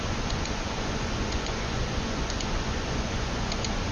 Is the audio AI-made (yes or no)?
yes